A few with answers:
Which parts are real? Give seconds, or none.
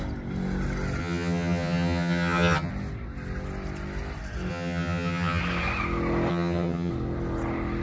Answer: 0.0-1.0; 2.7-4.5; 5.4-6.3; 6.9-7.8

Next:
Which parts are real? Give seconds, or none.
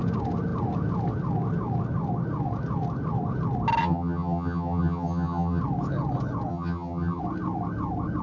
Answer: 0.0-3.8; 5.6-6.5; 7.2-8.2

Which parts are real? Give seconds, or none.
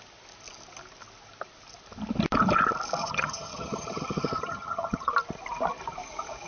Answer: 0.0-3.0; 5.1-6.5